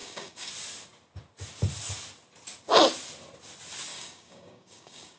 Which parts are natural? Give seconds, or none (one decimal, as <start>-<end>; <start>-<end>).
0.5-3.9